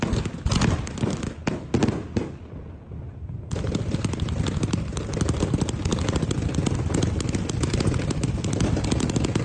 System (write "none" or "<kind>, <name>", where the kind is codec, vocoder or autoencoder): none